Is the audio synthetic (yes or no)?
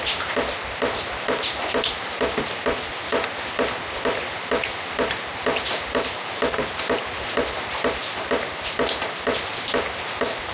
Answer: no